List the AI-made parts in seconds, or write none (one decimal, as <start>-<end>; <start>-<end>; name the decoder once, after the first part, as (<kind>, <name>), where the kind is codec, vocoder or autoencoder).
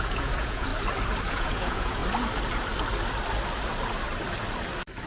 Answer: 0.0-0.7 (vocoder, Vocos); 1.3-2.0